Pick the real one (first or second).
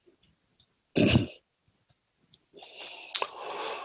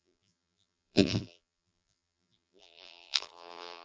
first